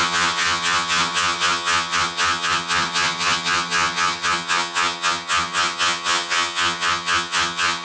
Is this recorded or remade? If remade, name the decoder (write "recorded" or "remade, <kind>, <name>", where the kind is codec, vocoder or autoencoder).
remade, vocoder, HiFi-GAN